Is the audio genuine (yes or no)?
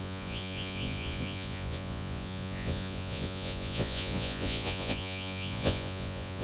no